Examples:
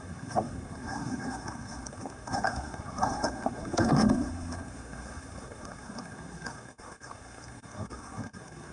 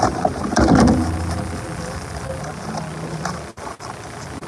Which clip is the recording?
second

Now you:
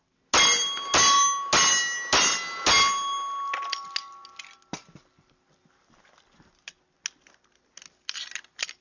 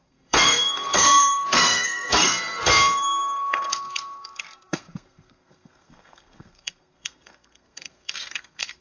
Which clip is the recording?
first